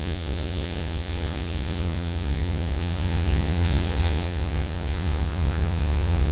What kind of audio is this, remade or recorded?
remade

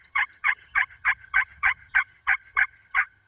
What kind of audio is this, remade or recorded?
remade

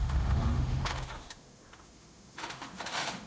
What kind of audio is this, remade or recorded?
remade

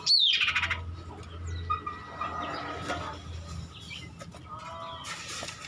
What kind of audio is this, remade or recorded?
recorded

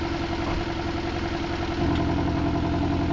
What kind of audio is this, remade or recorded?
recorded